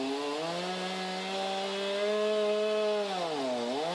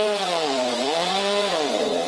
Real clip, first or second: first